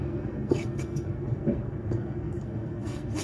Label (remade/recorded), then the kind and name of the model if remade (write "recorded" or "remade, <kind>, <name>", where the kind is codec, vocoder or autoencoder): remade, codec, SNAC